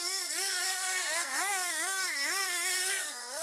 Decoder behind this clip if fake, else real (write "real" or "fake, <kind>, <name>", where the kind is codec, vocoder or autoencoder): fake, codec, SNAC